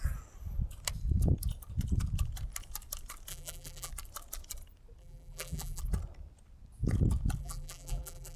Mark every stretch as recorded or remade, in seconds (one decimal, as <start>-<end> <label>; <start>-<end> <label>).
0.0-3.3 recorded; 3.3-3.9 remade; 3.9-5.0 recorded; 5.0-5.8 remade; 5.8-7.4 recorded; 7.4-8.4 remade